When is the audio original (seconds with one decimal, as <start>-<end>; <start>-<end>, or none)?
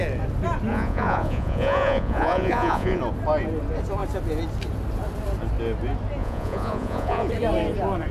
0.0-0.7; 3.0-6.2; 7.3-8.1